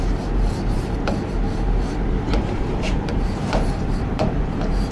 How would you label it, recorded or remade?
remade